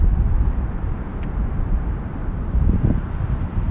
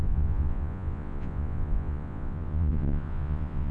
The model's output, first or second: second